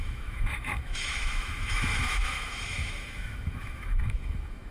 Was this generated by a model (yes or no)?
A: yes